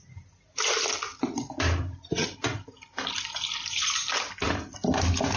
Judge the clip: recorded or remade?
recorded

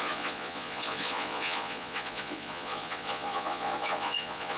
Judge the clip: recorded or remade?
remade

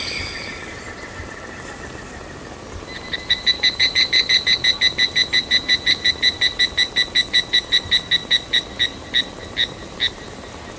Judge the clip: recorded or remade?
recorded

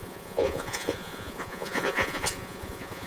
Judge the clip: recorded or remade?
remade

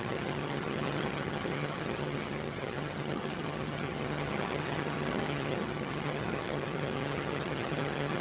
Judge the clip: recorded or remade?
remade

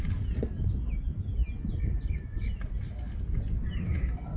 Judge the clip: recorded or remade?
recorded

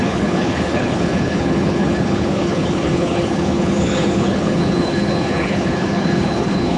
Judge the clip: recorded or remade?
remade